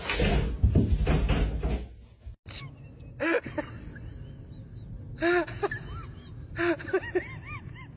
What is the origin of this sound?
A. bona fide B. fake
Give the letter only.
A